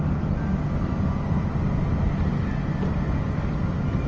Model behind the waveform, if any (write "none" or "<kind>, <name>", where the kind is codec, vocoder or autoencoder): none